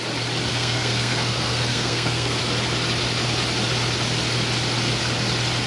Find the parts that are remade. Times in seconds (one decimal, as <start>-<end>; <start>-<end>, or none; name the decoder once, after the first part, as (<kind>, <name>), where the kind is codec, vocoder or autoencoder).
0.5-2.4 (codec, SNAC)

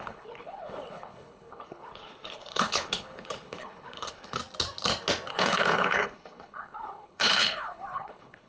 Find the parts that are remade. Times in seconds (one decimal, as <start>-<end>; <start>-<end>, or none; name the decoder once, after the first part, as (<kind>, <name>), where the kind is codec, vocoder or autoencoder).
0.0-4.4 (codec, HILCodec); 5.3-8.5

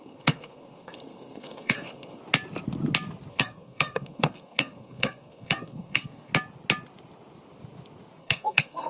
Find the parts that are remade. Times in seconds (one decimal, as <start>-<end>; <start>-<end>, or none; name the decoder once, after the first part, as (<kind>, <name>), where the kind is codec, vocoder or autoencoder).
0.0-2.2 (codec, SNAC); 3.3-6.3; 8.2-8.9